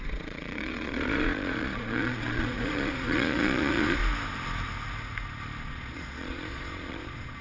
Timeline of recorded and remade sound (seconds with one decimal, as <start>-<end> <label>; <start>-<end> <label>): 0.0-4.0 remade; 4.0-5.6 recorded; 5.6-7.4 remade